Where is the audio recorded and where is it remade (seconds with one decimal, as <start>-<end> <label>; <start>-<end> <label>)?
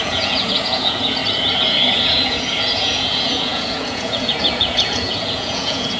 0.0-1.2 remade; 1.2-2.0 recorded; 2.0-6.0 remade